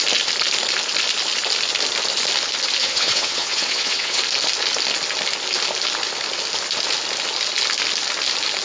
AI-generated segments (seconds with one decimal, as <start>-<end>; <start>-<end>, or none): 2.8-4.2